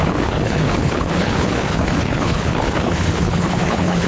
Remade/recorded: remade